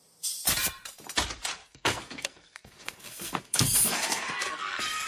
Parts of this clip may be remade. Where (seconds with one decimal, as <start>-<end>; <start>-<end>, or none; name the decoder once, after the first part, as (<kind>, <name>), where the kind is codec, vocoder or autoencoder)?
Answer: 1.6-5.1 (codec, SNAC)